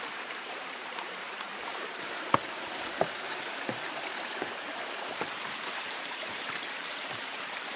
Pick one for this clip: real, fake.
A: fake